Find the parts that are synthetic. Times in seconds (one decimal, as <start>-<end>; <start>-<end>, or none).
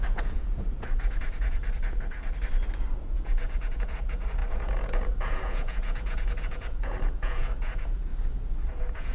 0.0-1.6; 3.0-8.1; 8.7-9.1